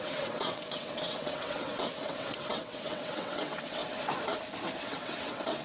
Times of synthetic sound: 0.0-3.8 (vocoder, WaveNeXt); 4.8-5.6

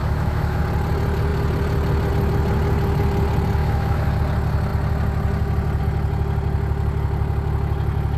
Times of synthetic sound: 0.0-0.6 (autoencoder, DAC-VAE); 3.6-4.1

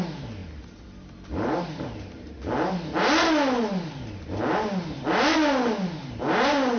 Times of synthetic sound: none

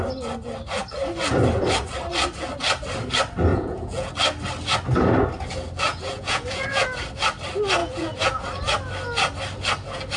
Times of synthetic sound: 3.5-4.1 (vocoder, Vocos); 5.9-6.8; 7.8-8.4

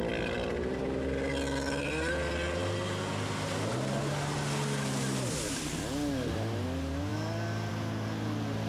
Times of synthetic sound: none

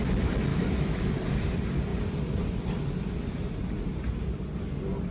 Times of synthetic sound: 0.5-1.1 (autoencoder, DAC-VAE)